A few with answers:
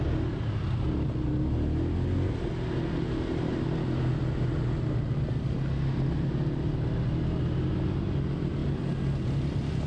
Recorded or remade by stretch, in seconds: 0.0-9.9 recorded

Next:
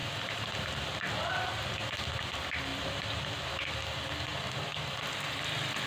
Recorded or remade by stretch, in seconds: 0.0-2.7 recorded; 2.7-3.3 remade; 3.3-5.9 recorded

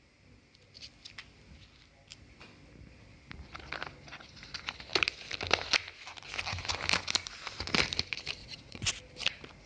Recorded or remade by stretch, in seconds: 0.0-8.4 recorded; 8.4-8.9 remade; 8.9-9.7 recorded

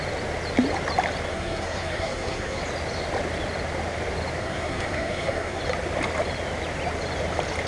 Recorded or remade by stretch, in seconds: 0.0-1.3 recorded; 1.3-2.6 remade; 2.6-4.4 recorded; 4.4-5.6 remade; 5.6-7.7 recorded

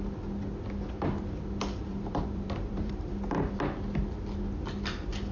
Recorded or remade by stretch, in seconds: 0.0-1.9 recorded; 1.9-3.1 remade; 3.1-5.3 recorded

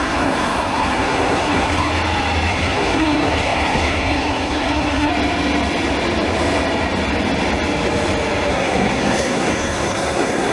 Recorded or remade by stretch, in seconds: 0.0-1.9 remade; 1.9-2.5 recorded; 2.5-5.1 remade; 5.1-8.5 recorded; 8.5-10.5 remade

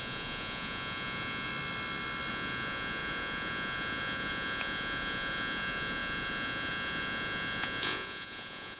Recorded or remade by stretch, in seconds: 0.0-1.5 remade; 1.5-2.3 recorded; 2.3-8.8 remade